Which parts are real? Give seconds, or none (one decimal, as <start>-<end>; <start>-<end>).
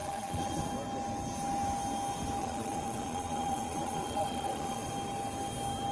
0.7-2.4; 4.9-5.9